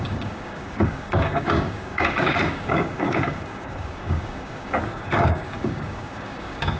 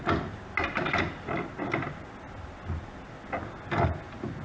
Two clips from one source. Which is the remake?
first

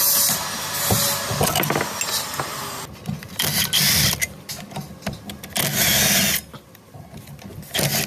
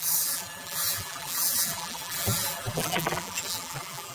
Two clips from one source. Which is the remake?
second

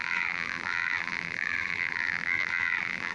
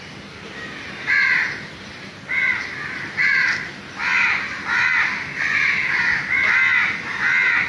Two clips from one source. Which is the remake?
first